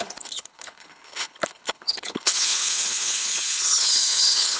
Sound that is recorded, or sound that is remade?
remade